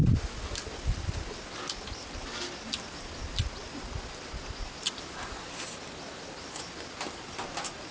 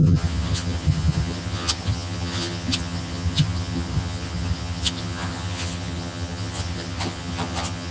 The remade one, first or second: second